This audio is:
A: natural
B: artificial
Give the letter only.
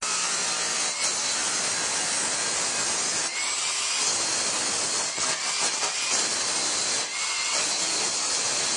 A